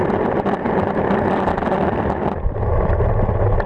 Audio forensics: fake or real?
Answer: real